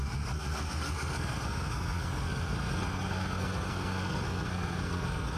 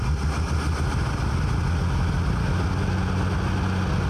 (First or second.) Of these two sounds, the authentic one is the second